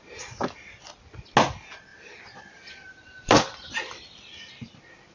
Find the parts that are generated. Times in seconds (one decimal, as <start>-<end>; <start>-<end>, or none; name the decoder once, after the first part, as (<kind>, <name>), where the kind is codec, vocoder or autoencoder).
1.9-3.7 (vocoder, BigVGAN v2)